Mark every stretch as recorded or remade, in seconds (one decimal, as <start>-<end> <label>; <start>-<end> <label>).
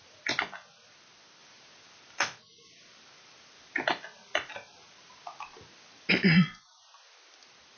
0.0-7.8 recorded